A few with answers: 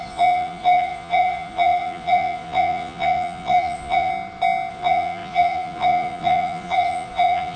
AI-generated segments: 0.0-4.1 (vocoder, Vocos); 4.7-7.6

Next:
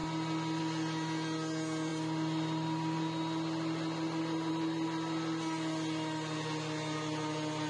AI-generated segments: none

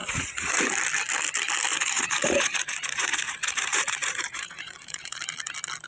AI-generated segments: 0.0-0.6 (vocoder, Vocos); 1.7-5.2

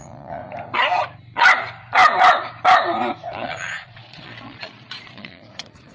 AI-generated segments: 0.0-0.4 (vocoder, Vocos); 3.3-5.9

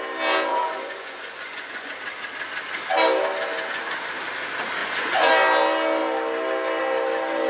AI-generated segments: 0.5-1.9 (vocoder, Vocos); 4.8-5.3

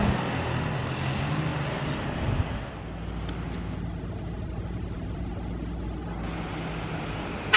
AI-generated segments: none

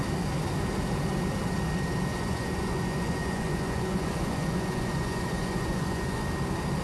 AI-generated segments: 2.1-6.2 (vocoder, Vocos)

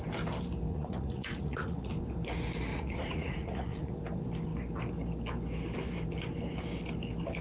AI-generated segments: 0.7-1.9 (vocoder, Vocos); 2.7-4.0